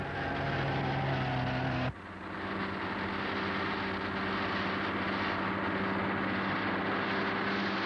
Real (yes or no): yes